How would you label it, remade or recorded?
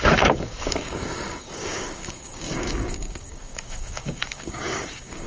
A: remade